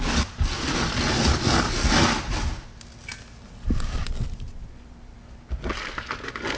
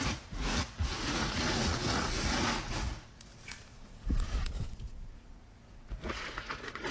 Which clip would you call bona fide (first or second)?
first